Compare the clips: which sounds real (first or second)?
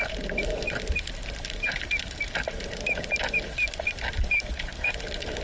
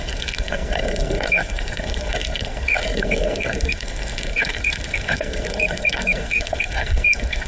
first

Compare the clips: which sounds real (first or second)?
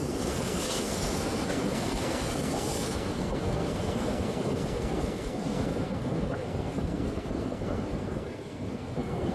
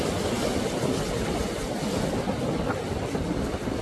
second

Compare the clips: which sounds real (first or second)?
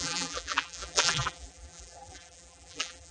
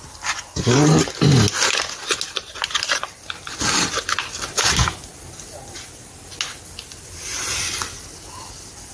second